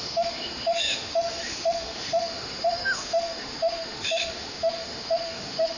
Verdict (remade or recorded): remade